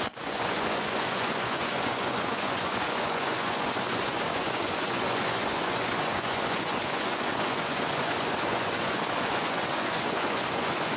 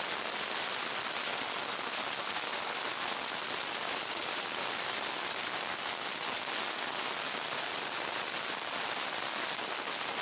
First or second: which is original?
second